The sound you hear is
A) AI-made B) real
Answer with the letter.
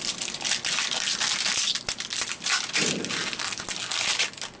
B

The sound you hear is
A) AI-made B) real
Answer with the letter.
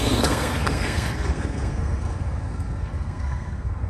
A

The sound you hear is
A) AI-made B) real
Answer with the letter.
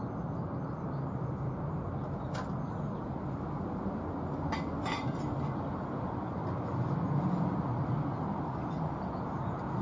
B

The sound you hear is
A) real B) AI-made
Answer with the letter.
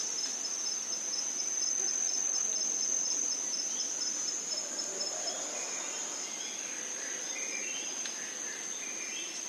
A